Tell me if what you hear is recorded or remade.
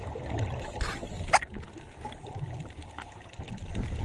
recorded